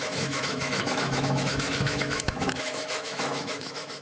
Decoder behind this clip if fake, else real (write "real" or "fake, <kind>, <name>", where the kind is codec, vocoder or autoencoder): fake, autoencoder, DAC-VAE